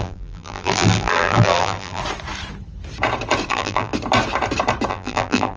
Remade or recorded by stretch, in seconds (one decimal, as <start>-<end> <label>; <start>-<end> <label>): 0.0-2.0 remade; 2.0-3.5 recorded; 3.5-3.9 remade; 3.9-4.9 recorded; 4.9-5.6 remade